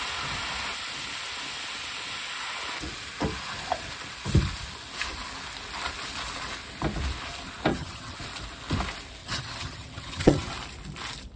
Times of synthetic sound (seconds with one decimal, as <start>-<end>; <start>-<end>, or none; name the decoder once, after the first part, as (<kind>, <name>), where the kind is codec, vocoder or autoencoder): 7.7-8.2 (vocoder, HiFi-GAN); 9.2-10.5